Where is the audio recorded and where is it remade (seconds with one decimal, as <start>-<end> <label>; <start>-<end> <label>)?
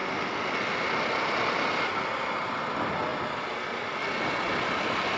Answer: 0.0-5.2 recorded